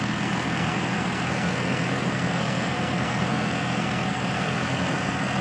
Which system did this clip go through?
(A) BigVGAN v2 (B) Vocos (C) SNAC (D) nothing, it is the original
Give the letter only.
C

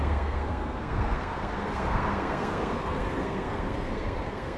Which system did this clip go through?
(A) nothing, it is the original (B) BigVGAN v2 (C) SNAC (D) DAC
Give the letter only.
C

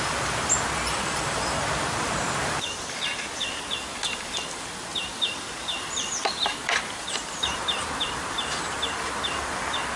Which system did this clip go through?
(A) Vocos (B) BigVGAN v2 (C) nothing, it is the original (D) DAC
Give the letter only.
B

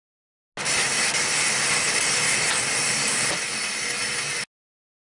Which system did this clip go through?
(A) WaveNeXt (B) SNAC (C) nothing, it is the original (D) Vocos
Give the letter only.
C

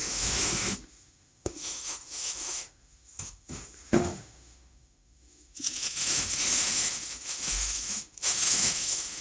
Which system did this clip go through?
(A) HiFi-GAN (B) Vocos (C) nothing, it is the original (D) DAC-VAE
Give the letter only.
D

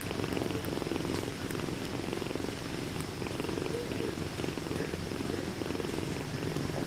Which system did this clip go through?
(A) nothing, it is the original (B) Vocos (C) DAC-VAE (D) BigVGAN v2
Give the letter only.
A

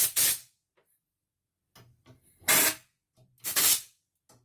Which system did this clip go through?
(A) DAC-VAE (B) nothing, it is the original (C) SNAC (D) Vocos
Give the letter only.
B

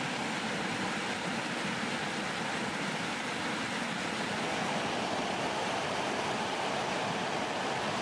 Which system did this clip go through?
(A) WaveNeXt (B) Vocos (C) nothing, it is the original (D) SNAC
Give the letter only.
C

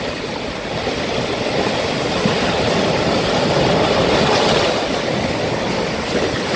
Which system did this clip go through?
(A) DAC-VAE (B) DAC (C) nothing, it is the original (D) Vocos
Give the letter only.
C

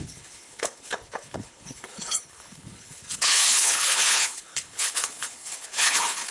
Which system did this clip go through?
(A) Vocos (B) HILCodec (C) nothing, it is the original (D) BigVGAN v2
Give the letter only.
B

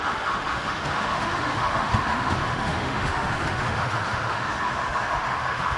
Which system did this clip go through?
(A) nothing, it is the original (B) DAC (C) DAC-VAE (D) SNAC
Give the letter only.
C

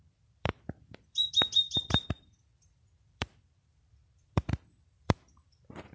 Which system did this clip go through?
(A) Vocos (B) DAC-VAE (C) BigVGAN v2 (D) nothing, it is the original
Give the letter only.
C